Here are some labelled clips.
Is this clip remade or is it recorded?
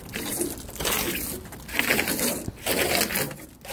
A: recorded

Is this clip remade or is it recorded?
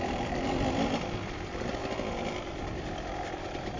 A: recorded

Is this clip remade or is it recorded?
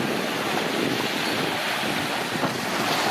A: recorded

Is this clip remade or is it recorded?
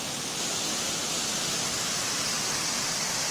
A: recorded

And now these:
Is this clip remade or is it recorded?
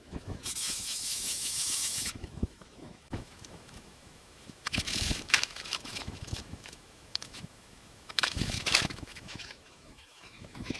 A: remade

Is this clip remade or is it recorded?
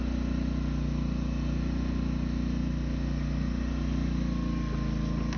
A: recorded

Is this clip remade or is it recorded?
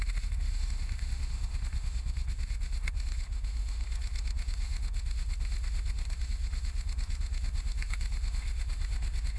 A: remade